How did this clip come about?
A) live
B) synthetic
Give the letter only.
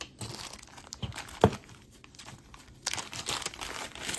A